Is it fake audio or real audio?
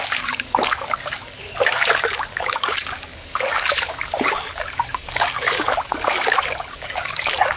fake